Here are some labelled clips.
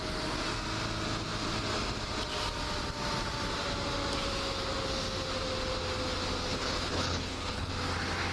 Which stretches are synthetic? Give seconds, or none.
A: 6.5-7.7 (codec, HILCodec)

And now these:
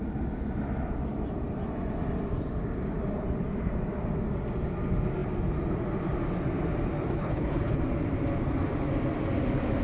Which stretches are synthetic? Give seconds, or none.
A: 7.1-7.8 (codec, HILCodec)

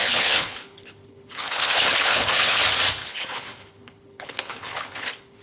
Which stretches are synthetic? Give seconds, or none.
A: 0.0-2.6 (codec, HILCodec); 3.0-5.4